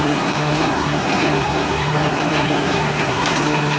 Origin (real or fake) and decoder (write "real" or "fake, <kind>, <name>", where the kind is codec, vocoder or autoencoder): fake, codec, SNAC